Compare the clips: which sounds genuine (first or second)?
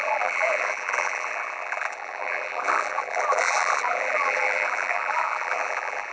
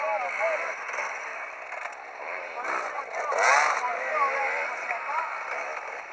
second